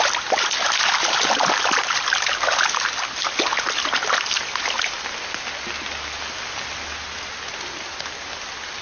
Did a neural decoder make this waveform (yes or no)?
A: no